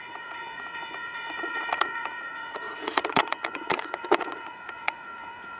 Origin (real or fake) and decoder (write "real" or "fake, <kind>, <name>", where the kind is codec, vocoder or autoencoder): fake, vocoder, Vocos